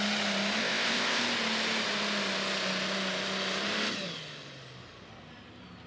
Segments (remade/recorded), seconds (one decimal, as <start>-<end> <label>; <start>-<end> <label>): 0.0-0.6 recorded; 0.6-1.2 remade; 1.2-5.9 recorded